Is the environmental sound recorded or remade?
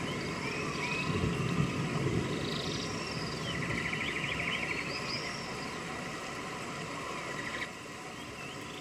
recorded